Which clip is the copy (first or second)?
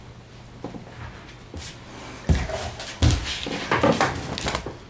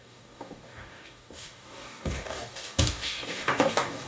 second